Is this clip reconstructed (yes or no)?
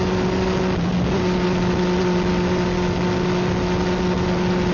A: no